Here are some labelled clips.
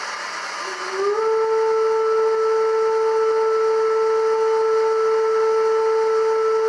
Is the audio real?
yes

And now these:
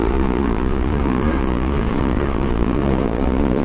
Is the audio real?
no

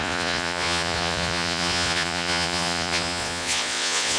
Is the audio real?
no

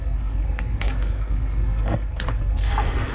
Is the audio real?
no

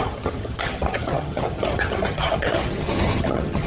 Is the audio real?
no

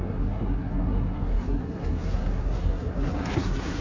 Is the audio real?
no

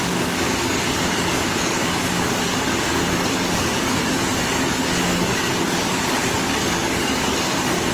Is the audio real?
no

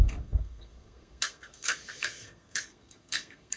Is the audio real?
no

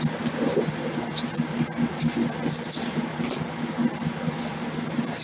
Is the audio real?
yes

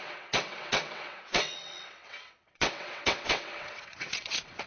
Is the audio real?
no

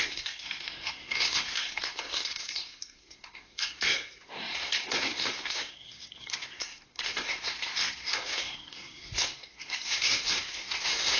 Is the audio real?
no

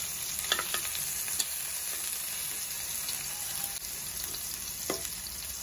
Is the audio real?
yes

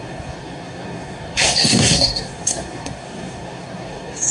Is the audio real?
no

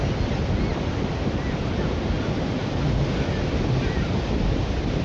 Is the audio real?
yes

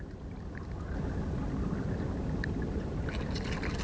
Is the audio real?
yes